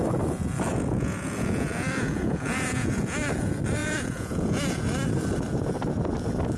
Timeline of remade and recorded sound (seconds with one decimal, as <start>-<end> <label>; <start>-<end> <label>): 0.0-0.7 recorded; 0.7-3.2 remade; 3.2-3.8 recorded; 3.8-4.8 remade; 4.8-6.6 recorded